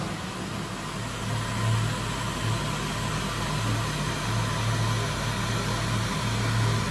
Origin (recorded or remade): recorded